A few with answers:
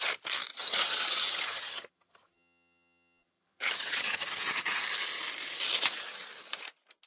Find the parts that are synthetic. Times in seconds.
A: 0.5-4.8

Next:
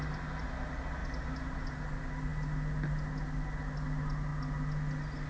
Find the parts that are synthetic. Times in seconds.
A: none

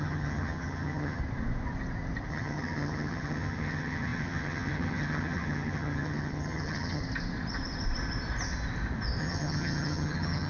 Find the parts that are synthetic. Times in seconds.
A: 0.0-1.2; 2.3-7.0; 9.2-10.5

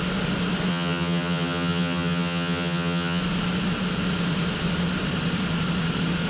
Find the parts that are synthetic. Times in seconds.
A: 0.7-3.2

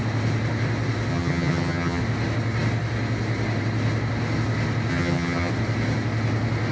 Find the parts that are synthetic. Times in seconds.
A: 1.1-2.0; 4.9-5.5

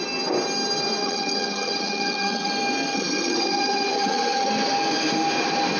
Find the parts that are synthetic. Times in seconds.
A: 1.0-2.5; 2.9-4.5

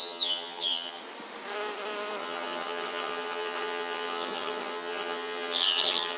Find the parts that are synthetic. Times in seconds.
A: 0.0-1.0; 2.2-6.2